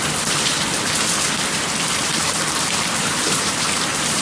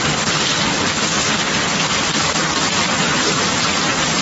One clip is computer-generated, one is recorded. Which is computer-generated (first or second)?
first